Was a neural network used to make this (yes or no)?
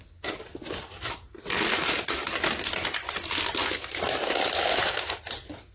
no